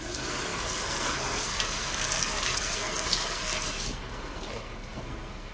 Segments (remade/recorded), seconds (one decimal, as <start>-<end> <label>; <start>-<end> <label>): 0.0-5.5 remade